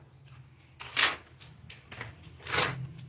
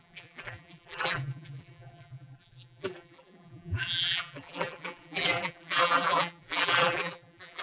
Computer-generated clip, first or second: second